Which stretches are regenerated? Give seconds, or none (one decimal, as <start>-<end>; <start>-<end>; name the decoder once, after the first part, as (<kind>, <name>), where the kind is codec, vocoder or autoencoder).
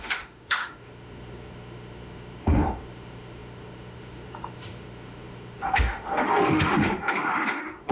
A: 0.0-7.9 (autoencoder, DAC-VAE)